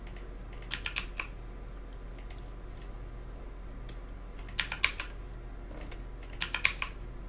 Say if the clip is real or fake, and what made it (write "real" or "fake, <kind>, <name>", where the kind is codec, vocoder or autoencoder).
real